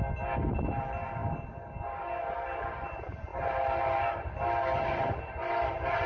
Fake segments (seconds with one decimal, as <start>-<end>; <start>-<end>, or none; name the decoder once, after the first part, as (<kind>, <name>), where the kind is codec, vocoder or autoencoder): none